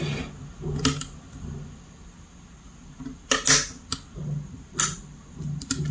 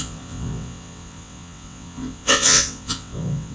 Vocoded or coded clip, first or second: second